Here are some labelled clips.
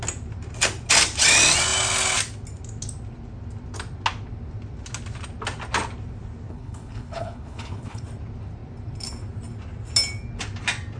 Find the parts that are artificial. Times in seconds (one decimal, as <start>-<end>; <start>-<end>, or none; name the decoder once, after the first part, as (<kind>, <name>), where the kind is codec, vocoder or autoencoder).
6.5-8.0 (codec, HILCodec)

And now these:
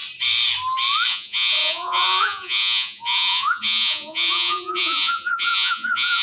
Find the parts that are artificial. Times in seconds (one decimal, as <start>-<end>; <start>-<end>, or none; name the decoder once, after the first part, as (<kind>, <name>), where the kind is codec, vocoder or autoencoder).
1.1-6.2 (vocoder, Vocos)

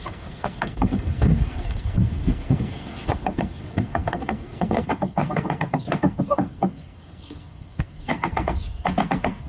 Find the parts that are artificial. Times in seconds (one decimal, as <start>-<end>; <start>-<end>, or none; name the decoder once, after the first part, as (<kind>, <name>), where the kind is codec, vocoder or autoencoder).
0.0-9.5 (codec, SNAC)

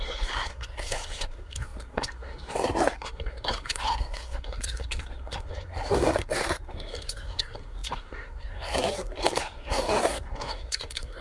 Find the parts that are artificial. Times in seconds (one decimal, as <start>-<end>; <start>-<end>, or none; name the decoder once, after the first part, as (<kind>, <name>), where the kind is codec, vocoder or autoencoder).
0.0-11.2 (codec, SNAC)